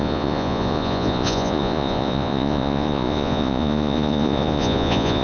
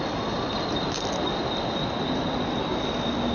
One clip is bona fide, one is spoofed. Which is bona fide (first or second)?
second